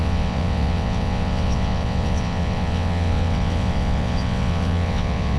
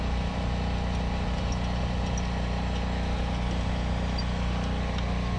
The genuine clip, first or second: second